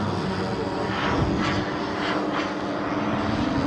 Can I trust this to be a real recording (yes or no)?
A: yes